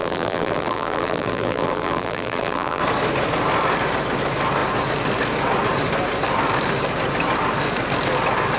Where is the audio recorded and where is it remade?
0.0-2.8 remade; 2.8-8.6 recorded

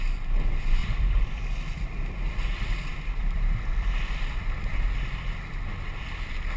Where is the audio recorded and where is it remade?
0.0-0.8 recorded; 0.8-2.3 remade; 2.3-2.9 recorded; 2.9-4.7 remade; 4.7-6.6 recorded

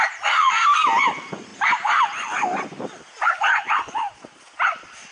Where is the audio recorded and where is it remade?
0.0-1.5 remade; 1.5-4.6 recorded; 4.6-5.1 remade

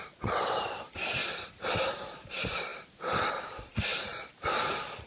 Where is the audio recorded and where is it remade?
0.0-1.2 remade; 1.2-1.7 recorded; 1.7-2.7 remade; 2.7-3.3 recorded; 3.3-5.1 remade

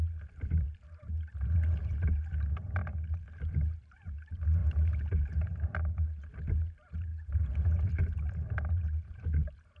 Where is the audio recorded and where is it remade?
0.0-2.8 remade; 2.8-3.4 recorded; 3.4-9.8 remade